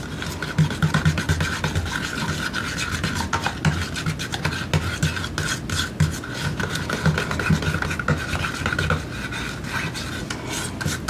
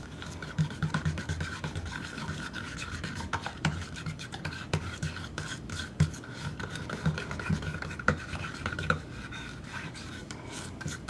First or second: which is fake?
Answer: second